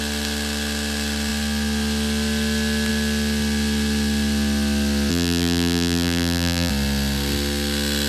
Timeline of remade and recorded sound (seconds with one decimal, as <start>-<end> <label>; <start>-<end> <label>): 0.0-5.1 recorded; 5.1-6.7 remade; 6.7-8.1 recorded